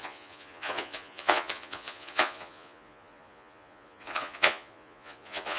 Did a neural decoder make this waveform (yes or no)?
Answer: yes